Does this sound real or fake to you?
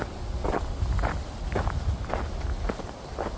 real